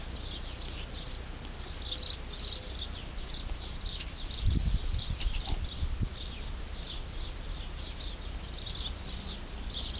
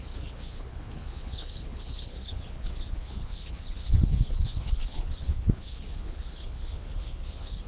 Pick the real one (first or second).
first